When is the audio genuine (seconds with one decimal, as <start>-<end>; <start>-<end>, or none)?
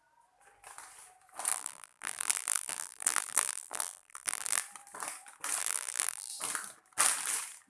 0.0-1.5; 4.6-5.6; 6.3-7.7